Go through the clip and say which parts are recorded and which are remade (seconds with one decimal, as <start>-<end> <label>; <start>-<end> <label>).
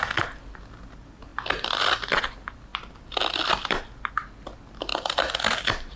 0.0-2.7 recorded; 2.7-3.8 remade; 3.8-4.9 recorded; 4.9-6.0 remade